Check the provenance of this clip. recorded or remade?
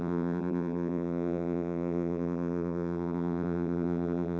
remade